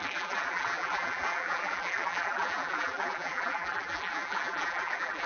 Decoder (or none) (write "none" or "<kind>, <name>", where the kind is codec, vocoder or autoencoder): vocoder, BigVGAN v2